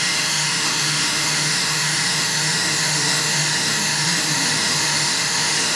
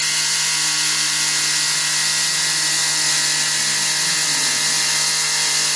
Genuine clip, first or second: second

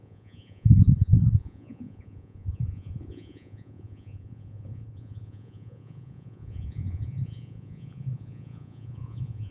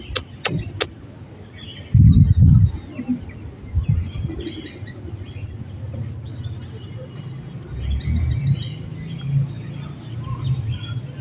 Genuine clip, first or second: second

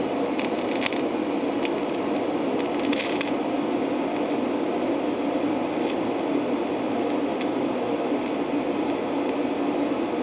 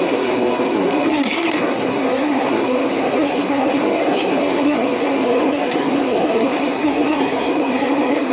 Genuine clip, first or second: first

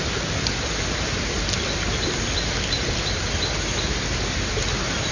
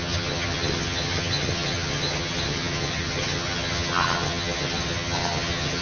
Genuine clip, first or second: first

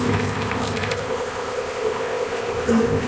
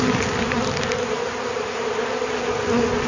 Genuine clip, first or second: second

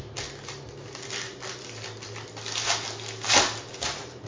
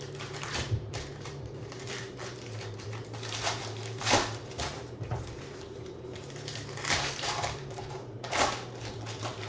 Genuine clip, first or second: first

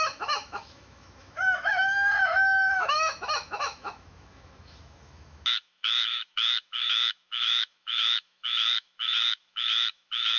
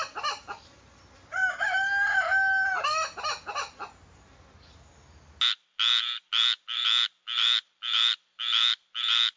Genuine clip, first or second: second